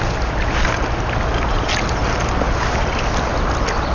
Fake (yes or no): no